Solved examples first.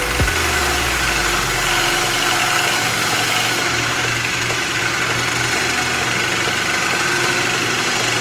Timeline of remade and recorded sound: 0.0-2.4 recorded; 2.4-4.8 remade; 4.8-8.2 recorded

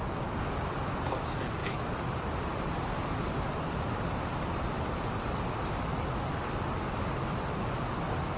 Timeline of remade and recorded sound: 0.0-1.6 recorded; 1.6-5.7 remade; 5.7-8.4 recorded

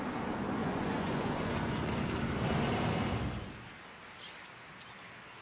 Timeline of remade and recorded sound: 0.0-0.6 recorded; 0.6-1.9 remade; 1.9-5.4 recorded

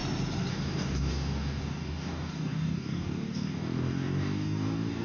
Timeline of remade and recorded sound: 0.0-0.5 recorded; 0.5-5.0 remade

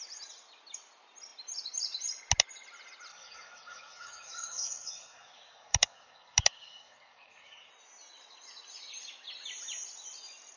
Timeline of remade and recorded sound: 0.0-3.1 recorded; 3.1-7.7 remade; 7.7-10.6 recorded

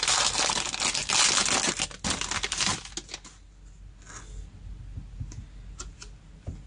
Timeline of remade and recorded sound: 0.0-6.7 recorded

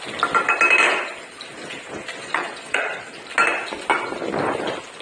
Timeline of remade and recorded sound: 0.0-2.2 recorded; 2.2-3.1 remade; 3.1-5.0 recorded